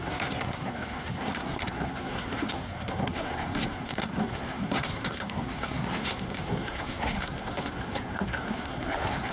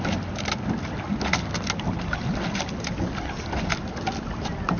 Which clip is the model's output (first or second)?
first